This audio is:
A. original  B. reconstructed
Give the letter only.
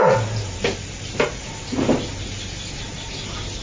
A